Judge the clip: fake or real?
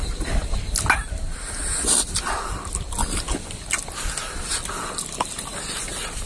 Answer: real